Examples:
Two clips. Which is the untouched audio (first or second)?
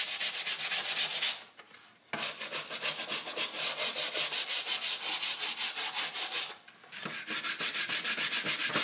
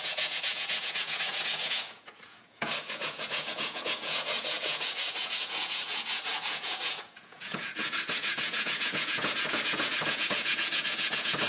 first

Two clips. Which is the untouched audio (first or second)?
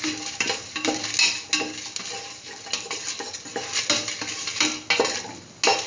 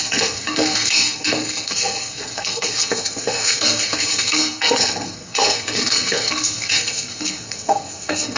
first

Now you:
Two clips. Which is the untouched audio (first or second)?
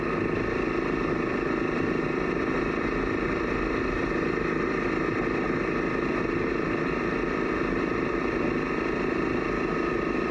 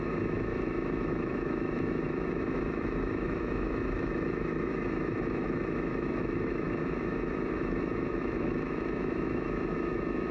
first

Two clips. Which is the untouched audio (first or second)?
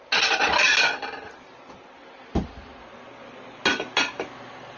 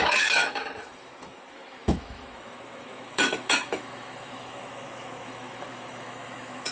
first